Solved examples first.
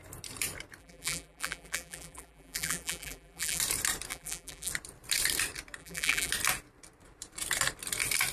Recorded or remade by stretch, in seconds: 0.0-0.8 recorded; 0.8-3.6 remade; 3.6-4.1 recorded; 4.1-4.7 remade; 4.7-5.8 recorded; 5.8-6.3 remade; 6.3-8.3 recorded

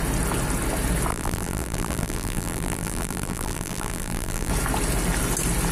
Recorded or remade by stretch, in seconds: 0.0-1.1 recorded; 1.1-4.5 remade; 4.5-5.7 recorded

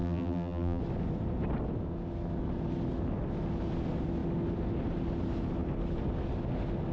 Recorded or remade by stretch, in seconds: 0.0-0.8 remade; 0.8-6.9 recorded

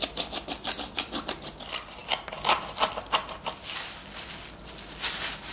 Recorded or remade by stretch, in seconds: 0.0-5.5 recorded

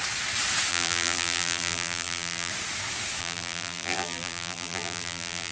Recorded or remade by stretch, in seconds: 0.0-0.7 recorded; 0.7-2.5 remade; 2.5-3.2 recorded; 3.2-5.5 remade

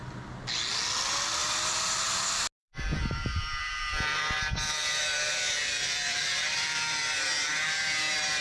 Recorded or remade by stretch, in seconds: 0.0-1.4 recorded; 1.4-2.1 remade; 2.1-2.6 recorded; 2.6-7.3 remade; 7.3-8.4 recorded

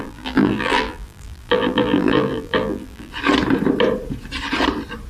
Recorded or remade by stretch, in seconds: 0.0-3.1 remade; 3.1-5.1 recorded

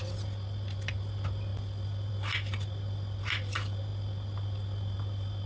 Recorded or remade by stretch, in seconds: 0.0-5.5 recorded